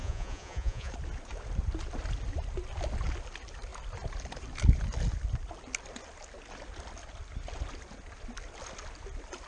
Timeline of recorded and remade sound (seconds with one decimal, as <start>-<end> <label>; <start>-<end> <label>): 0.0-0.9 remade; 0.9-9.5 recorded